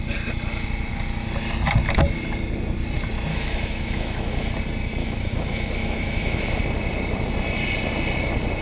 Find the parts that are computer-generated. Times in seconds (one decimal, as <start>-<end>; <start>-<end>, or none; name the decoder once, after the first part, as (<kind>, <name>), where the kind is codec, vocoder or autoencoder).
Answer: 3.3-4.5 (autoencoder, DAC-VAE); 5.0-6.6